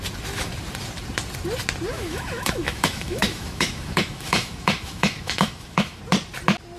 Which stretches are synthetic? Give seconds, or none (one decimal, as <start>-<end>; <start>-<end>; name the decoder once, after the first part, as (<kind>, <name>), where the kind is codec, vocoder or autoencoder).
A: 1.9-6.0 (autoencoder, DAC-VAE)